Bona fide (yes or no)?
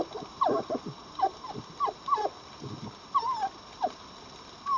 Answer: yes